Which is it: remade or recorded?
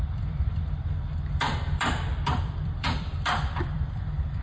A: remade